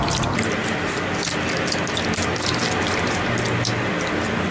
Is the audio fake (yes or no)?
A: no